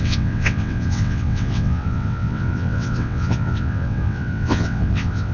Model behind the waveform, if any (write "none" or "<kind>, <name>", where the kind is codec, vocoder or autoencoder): vocoder, WaveNeXt